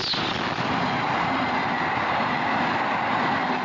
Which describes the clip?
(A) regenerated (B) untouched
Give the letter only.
B